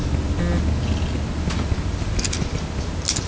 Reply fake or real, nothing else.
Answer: real